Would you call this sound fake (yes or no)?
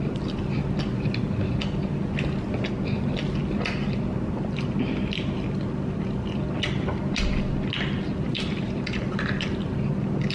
no